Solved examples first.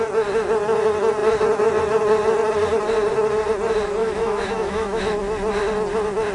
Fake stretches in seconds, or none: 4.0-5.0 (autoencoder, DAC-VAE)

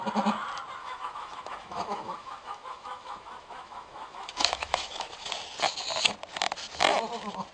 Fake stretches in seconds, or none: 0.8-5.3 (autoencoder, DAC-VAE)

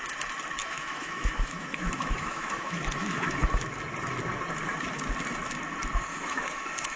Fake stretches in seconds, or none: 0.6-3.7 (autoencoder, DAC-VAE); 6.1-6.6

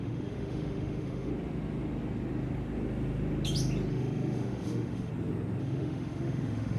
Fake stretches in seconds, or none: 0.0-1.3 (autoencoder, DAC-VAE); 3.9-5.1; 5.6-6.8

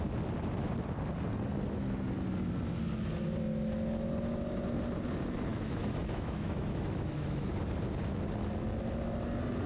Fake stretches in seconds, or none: 5.5-7.5 (autoencoder, DAC-VAE)